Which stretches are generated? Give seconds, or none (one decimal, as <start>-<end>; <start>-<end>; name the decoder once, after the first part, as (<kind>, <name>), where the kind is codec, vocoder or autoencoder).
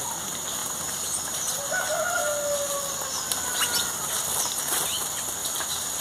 0.6-1.7 (vocoder, BigVGAN v2); 5.4-6.0